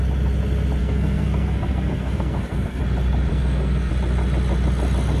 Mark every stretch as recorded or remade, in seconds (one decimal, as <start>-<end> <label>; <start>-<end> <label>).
0.0-0.8 recorded; 0.8-2.8 remade; 2.8-3.3 recorded; 3.3-3.9 remade; 3.9-5.2 recorded